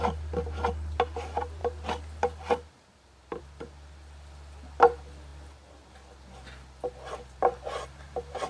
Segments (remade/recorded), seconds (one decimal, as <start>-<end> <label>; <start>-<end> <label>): 0.0-8.5 recorded